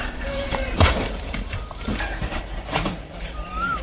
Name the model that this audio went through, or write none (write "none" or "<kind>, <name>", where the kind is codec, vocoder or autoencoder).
vocoder, BigVGAN v2